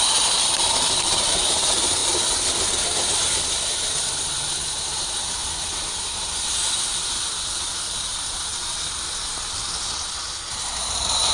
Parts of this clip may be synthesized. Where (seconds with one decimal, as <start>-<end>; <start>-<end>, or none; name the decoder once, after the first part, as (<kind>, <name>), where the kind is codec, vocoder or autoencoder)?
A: 0.0-5.4 (vocoder, BigVGAN v2); 8.0-8.5; 9.8-11.3